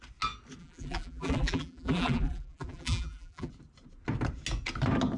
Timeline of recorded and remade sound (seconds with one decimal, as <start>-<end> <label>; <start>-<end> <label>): 0.0-0.6 recorded; 0.6-3.5 remade; 3.5-5.2 recorded